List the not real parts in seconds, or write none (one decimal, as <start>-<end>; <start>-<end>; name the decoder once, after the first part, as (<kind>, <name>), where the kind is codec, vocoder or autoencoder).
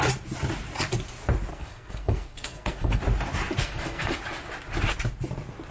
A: 1.5-3.0 (codec, SNAC); 3.6-4.2